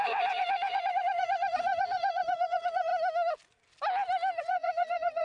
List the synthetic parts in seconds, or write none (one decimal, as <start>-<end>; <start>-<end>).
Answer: 0.0-2.9; 4.4-5.2